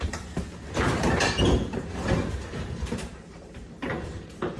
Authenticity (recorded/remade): remade